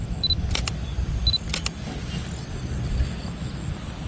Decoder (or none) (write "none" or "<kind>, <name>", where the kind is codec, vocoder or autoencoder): none